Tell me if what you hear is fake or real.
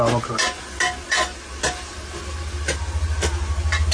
real